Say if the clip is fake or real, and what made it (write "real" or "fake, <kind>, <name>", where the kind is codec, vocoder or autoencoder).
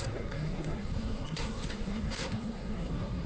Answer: fake, codec, SNAC